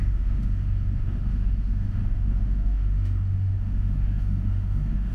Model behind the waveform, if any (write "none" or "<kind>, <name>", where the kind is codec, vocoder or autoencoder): autoencoder, DAC-VAE